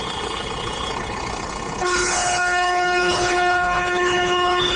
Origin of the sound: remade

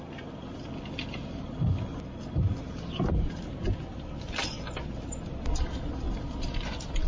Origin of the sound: recorded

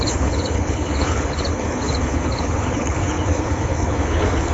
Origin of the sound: remade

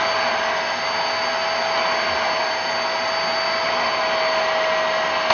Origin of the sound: recorded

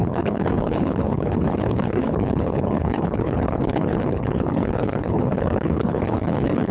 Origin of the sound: remade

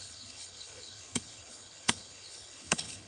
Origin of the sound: remade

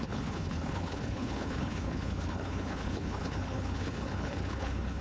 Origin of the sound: remade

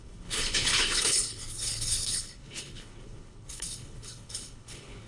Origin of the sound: remade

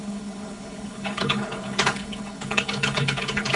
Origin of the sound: remade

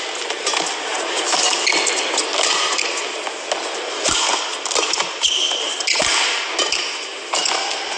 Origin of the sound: recorded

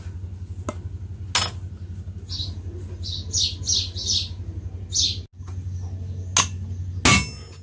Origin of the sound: recorded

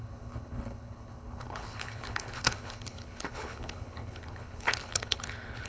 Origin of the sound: remade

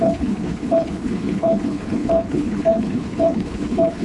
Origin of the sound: remade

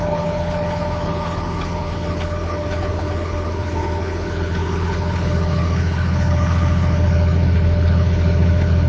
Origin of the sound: remade